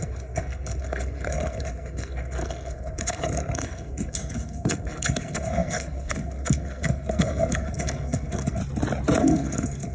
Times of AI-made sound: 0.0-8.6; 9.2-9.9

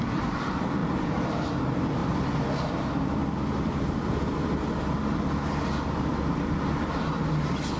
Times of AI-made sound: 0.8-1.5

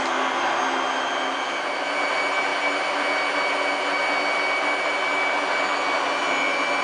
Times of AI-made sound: none

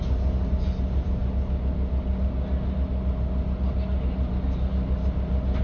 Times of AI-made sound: none

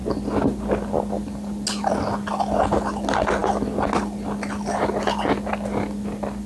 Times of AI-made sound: none

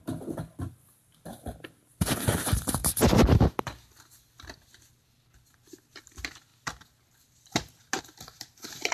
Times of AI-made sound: none

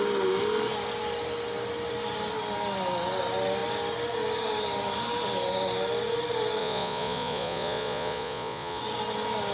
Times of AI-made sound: 6.6-8.8

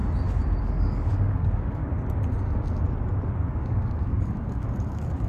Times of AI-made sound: 0.6-1.8; 3.5-5.3